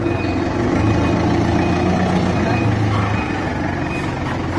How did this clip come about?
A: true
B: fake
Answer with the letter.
A